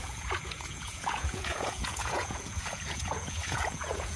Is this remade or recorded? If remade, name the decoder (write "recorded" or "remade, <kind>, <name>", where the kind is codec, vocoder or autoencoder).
remade, vocoder, Vocos